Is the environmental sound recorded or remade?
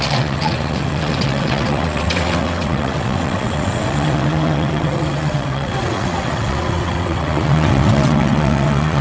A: remade